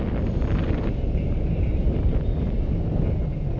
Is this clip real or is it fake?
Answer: real